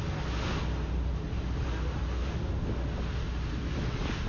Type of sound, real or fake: real